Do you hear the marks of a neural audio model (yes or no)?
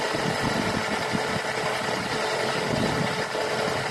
no